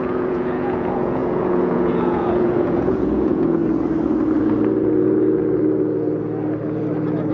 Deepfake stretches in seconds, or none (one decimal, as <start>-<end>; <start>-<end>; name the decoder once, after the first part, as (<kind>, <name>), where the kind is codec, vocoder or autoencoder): 0.0-3.6 (vocoder, Vocos)